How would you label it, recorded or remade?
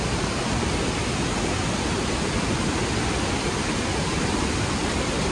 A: recorded